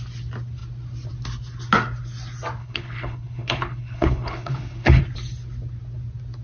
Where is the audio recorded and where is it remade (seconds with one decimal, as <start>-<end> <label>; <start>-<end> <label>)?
0.0-2.6 recorded; 2.6-5.0 remade; 5.0-6.4 recorded